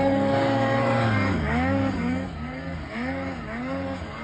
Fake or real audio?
fake